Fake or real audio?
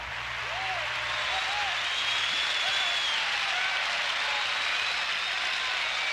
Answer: real